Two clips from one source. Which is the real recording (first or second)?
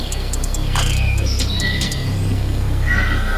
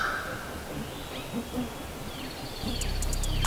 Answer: second